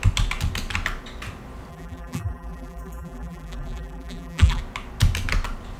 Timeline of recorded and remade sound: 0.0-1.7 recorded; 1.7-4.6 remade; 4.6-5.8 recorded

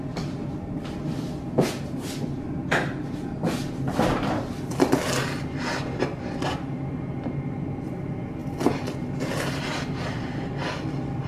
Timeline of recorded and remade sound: 0.0-11.3 recorded

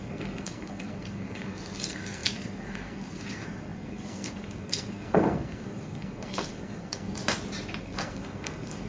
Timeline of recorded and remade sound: 0.0-7.2 remade; 7.2-7.8 recorded; 7.8-8.9 remade

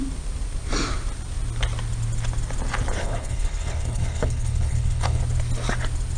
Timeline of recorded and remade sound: 0.0-3.0 recorded; 3.0-5.2 remade; 5.2-6.2 recorded

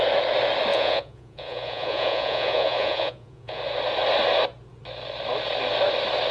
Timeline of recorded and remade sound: 0.0-0.7 recorded; 0.7-3.6 remade; 3.6-6.3 recorded

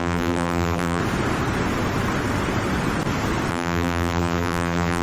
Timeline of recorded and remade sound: 0.0-1.0 remade; 1.0-3.5 recorded; 3.5-5.0 remade

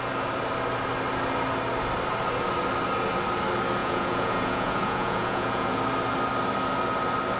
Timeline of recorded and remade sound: 0.0-3.8 recorded; 3.8-5.8 remade; 5.8-7.4 recorded